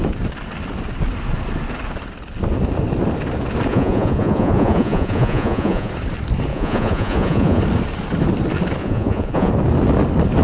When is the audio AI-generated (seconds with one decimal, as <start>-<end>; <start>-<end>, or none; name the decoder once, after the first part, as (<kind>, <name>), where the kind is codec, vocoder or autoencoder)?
3.7-5.9 (vocoder, Vocos); 6.5-7.6; 8.8-9.5